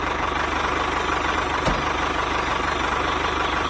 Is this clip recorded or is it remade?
recorded